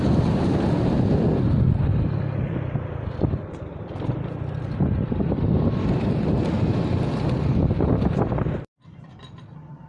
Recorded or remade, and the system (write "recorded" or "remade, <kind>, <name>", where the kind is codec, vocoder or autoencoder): remade, vocoder, BigVGAN v2